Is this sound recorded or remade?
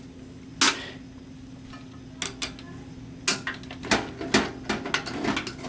recorded